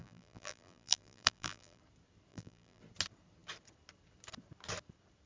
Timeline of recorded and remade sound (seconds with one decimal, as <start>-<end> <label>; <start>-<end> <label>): 0.0-1.8 remade; 1.8-2.3 recorded; 2.3-2.8 remade; 2.8-5.3 recorded